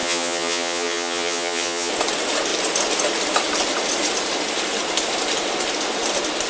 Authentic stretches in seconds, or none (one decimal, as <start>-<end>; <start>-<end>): 1.9-6.5